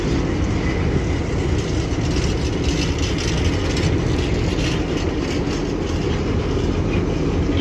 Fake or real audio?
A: real